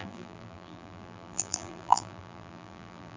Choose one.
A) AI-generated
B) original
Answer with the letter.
A